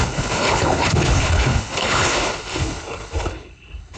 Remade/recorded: remade